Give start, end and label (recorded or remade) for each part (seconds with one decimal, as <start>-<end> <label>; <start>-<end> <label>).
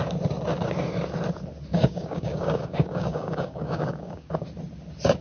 0.0-1.7 recorded; 1.7-4.3 remade; 4.3-5.2 recorded